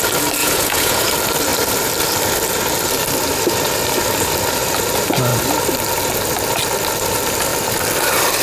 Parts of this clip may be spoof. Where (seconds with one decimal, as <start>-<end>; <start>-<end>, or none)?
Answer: 0.4-1.1